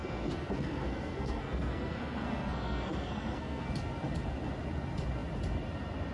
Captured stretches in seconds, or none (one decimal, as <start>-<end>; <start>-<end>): 3.7-6.1